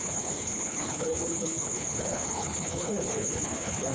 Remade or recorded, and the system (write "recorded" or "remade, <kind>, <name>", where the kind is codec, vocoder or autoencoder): remade, codec, HILCodec